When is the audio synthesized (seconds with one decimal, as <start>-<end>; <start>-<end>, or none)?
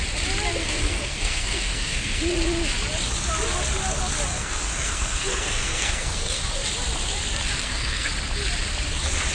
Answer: 0.6-2.2; 4.3-6.4; 7.6-8.1